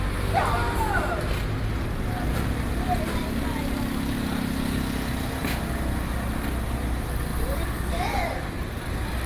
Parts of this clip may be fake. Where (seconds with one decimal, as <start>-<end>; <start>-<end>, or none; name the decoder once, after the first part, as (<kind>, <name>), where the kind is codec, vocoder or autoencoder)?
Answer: none